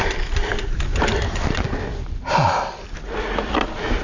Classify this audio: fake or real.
real